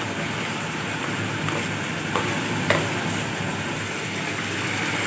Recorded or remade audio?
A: recorded